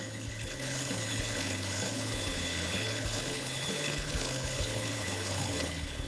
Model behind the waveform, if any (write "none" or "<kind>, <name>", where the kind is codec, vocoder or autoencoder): codec, HILCodec